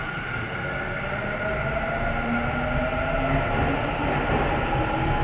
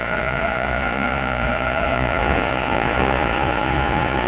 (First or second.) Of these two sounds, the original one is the first